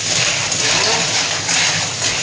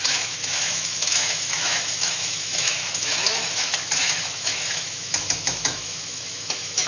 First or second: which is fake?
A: second